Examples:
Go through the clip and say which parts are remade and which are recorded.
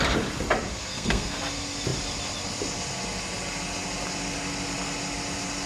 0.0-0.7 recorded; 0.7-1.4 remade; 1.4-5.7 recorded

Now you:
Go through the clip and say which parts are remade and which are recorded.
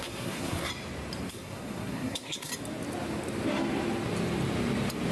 0.0-0.7 remade; 0.7-1.3 recorded; 1.3-2.5 remade; 2.5-5.1 recorded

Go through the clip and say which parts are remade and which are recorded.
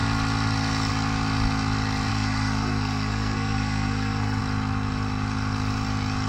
0.0-2.1 recorded; 2.1-4.4 remade; 4.4-6.3 recorded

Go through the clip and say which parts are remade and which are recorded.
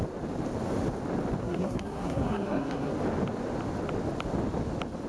0.0-1.4 recorded; 1.4-2.9 remade; 2.9-5.1 recorded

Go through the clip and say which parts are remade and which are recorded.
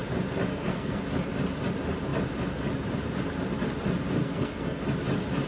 0.0-0.5 recorded; 0.5-1.0 remade; 1.0-4.2 recorded; 4.2-4.8 remade; 4.8-5.5 recorded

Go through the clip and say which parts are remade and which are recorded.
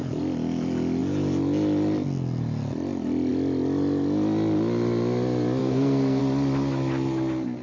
0.0-5.6 recorded; 5.6-6.2 remade; 6.2-7.6 recorded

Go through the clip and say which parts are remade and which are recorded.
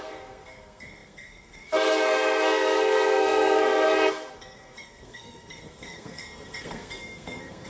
0.0-7.7 remade